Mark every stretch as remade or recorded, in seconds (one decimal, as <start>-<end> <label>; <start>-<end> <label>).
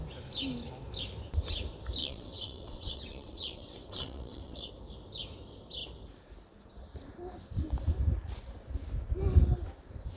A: 0.0-2.0 recorded; 2.0-4.7 remade; 4.7-10.2 recorded